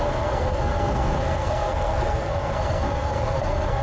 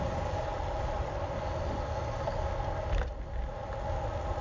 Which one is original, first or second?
second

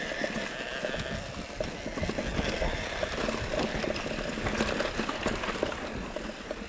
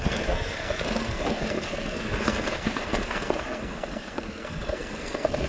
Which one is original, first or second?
first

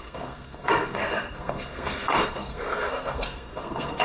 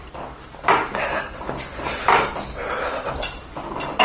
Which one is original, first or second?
second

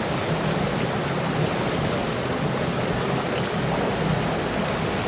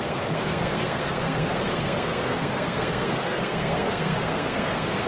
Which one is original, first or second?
first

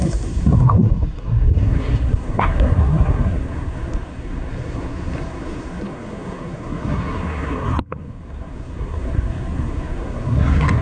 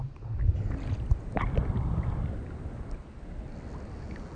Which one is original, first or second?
second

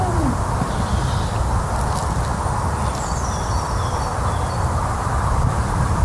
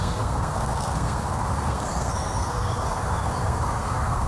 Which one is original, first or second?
first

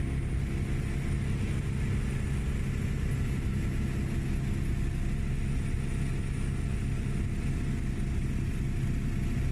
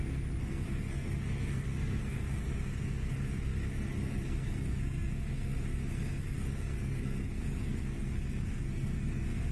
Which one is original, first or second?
first